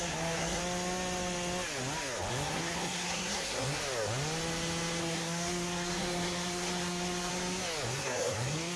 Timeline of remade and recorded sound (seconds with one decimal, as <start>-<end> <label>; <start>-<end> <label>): 0.0-0.6 remade; 0.6-2.3 recorded; 2.3-3.8 remade; 3.8-5.0 recorded; 5.0-7.3 remade; 7.3-7.9 recorded; 7.9-8.8 remade